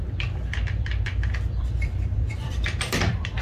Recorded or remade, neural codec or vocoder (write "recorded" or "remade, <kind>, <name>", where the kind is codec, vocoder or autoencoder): remade, vocoder, BigVGAN v2